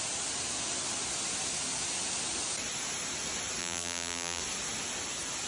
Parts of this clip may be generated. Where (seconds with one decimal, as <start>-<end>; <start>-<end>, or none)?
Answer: 3.6-4.4

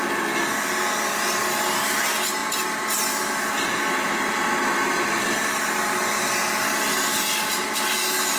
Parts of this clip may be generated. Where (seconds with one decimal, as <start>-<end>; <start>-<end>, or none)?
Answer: none

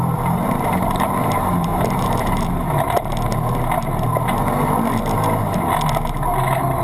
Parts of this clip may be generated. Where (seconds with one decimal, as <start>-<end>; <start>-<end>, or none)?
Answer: 0.0-2.6